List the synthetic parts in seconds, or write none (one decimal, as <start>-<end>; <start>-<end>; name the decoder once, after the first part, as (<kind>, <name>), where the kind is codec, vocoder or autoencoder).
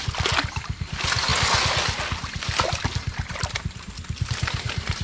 none